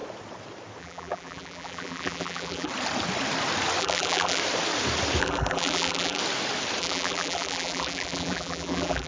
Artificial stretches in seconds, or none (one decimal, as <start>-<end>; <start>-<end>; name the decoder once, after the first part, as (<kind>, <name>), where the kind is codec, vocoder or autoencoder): 0.8-2.7 (vocoder, BigVGAN v2); 3.8-4.4; 5.2-6.2; 6.8-9.1